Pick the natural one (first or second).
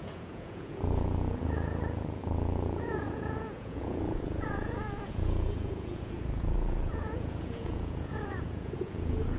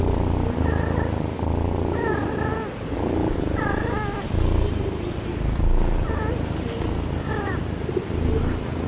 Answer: second